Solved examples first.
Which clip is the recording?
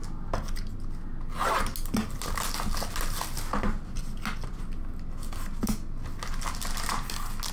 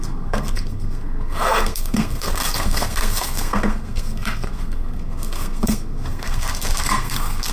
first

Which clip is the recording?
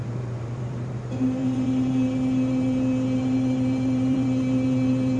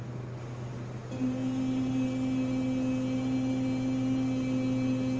second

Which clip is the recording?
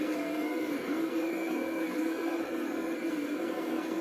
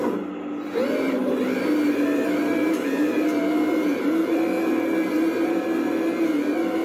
second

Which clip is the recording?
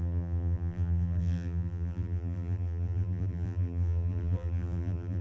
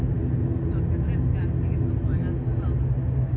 second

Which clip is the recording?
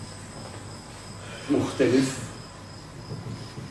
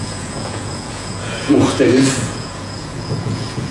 first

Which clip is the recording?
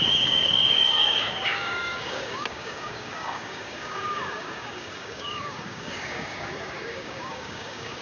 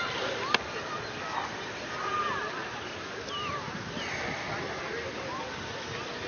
second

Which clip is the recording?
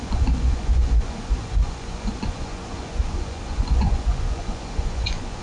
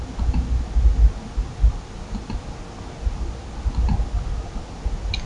second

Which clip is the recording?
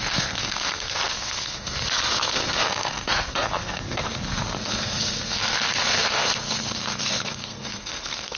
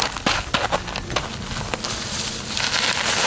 second